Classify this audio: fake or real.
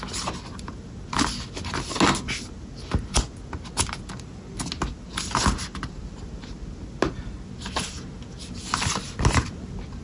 real